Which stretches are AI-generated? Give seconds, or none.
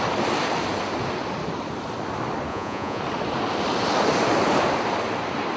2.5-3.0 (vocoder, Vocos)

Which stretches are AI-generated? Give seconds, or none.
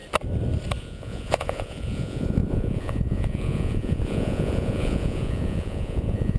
0.8-6.4 (vocoder, Vocos)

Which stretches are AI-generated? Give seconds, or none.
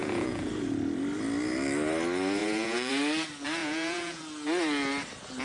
0.0-0.5 (vocoder, Vocos); 2.4-2.9; 3.6-4.2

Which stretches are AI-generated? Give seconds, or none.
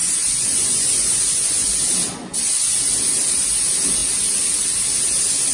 0.0-1.7 (vocoder, Vocos)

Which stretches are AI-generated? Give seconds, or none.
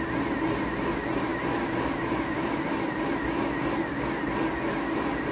none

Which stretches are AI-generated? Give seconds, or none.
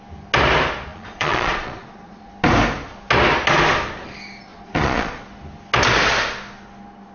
0.9-2.3 (vocoder, Vocos); 4.5-5.2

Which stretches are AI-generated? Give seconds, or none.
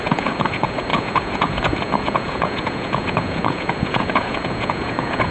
0.0-5.3 (vocoder, Vocos)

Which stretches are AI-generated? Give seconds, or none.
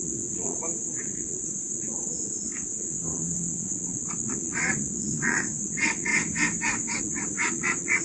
0.0-6.1 (vocoder, Vocos); 7.0-8.0